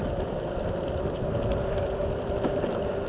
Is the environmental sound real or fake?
real